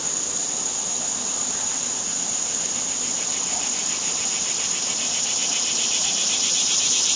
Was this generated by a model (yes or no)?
no